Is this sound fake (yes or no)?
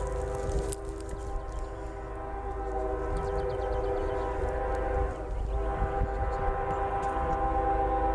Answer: no